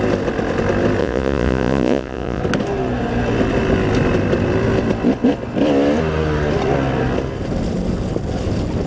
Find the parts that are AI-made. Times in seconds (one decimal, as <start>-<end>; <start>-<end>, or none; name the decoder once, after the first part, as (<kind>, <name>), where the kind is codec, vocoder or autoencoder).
1.0-2.4 (vocoder, Vocos)